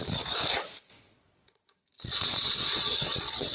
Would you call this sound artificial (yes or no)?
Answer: yes